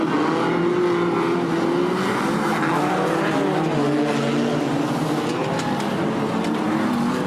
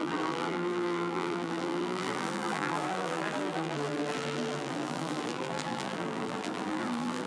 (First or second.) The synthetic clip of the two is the second